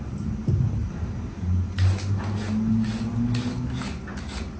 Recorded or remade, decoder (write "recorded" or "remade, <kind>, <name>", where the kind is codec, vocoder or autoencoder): recorded